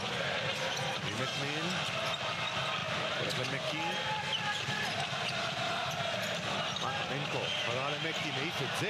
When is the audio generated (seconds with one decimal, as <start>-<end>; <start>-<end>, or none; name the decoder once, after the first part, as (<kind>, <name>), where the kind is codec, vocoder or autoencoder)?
none